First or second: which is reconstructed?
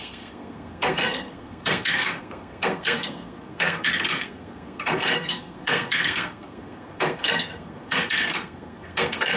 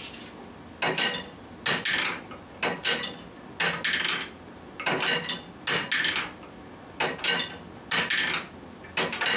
first